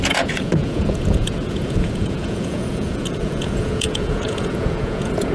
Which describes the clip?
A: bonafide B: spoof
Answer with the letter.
B